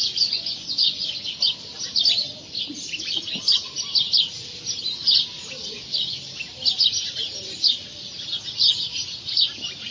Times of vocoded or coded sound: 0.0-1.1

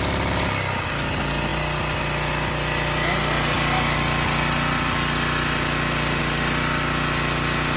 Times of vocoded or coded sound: none

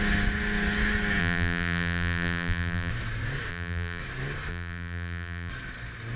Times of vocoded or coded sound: 1.2-2.9; 3.5-4.0; 4.5-5.5

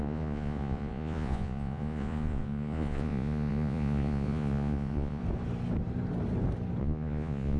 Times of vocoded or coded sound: 0.0-5.2; 6.8-7.6

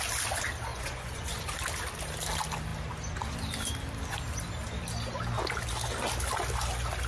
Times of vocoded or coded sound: 0.7-1.5

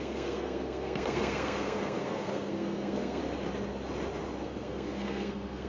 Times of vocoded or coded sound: 0.0-3.2; 4.4-5.7

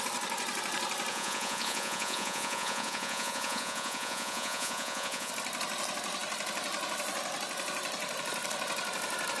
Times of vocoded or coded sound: 1.1-5.3